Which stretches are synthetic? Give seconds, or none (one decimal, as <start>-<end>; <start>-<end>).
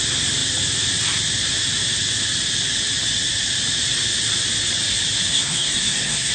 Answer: 5.3-6.3